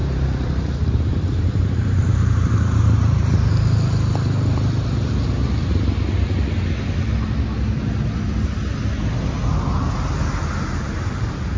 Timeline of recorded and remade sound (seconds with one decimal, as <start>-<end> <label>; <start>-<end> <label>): 0.0-3.5 remade; 3.5-11.6 recorded